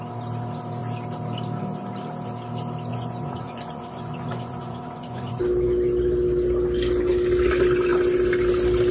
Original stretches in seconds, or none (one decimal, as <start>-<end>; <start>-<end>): 0.0-2.9; 5.4-8.9